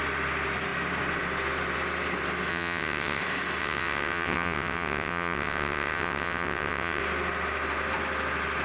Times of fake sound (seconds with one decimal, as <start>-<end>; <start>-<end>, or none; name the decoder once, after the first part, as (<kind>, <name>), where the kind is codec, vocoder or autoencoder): 2.5-3.2 (vocoder, WaveNeXt); 3.6-7.0